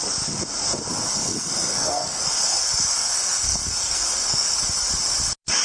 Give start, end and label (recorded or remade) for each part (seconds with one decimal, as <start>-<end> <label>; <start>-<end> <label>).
0.0-1.2 recorded; 1.2-4.6 remade; 4.6-5.6 recorded